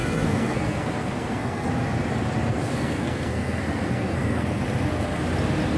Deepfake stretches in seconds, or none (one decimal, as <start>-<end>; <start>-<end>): 0.0-1.7; 2.5-4.6